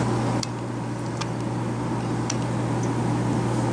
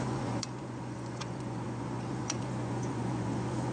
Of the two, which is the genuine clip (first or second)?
first